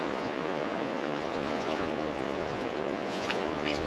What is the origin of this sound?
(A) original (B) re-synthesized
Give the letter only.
B